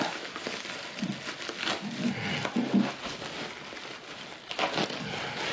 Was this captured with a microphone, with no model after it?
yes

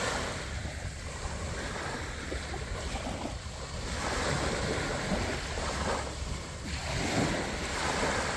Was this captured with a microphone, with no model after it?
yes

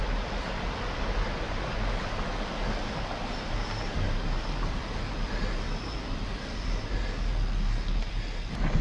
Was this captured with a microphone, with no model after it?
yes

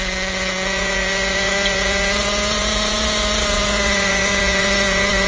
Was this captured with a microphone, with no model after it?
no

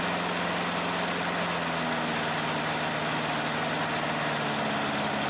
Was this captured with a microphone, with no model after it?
yes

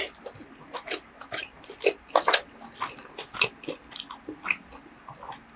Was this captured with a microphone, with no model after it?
yes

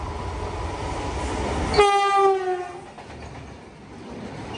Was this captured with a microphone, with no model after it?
yes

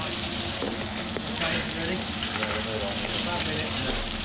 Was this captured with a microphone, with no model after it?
yes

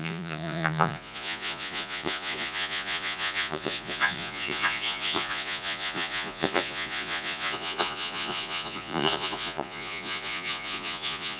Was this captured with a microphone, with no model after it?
no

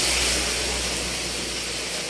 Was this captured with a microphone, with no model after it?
yes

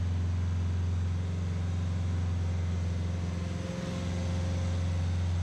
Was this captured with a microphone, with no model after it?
yes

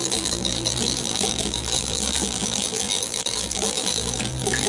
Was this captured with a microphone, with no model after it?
no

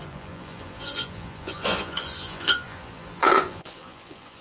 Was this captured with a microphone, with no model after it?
no